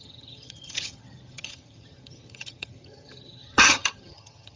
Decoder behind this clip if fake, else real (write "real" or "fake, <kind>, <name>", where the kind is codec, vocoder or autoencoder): fake, vocoder, HiFi-GAN